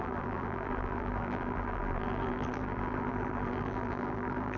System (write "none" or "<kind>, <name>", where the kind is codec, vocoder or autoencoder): vocoder, BigVGAN v2